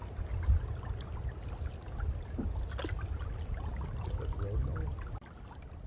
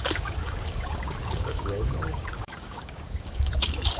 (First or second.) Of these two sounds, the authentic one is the first